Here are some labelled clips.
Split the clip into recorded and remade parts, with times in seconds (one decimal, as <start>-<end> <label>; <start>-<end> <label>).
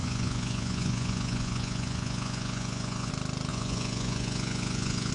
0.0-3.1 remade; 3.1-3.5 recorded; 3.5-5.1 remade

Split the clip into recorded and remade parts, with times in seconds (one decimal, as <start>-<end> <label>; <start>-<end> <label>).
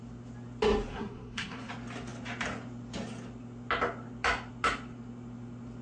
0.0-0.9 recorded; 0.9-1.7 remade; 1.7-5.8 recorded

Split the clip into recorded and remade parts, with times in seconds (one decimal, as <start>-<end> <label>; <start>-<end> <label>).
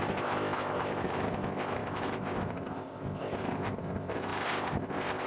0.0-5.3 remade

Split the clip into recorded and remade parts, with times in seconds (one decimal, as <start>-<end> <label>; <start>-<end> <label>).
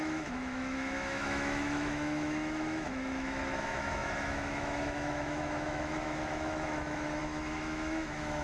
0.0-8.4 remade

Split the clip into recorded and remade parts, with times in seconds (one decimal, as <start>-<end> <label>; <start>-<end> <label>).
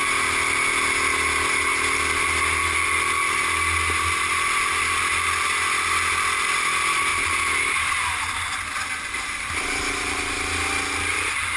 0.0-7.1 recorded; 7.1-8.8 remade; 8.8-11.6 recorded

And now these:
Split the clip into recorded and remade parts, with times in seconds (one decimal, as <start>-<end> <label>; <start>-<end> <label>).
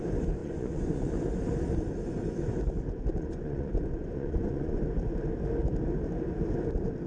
0.0-0.4 recorded; 0.4-1.1 remade; 1.1-3.1 recorded; 3.1-4.8 remade; 4.8-7.1 recorded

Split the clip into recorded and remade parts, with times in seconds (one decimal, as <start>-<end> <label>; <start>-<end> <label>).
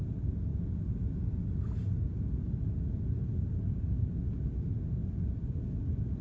0.0-6.2 recorded